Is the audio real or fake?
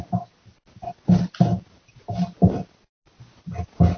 real